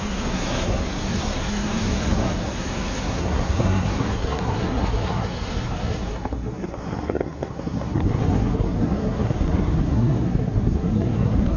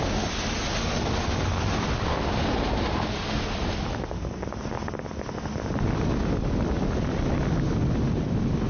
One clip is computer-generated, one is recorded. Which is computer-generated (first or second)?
first